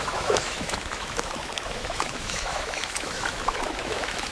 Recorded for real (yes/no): no